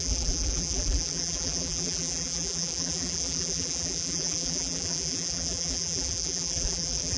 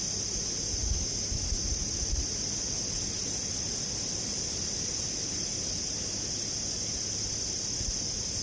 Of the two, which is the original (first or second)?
second